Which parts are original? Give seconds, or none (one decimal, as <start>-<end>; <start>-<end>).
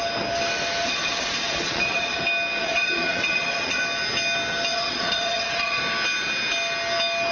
0.0-0.8; 2.2-2.6; 3.8-4.7; 5.8-7.3